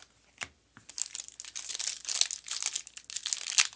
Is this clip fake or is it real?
real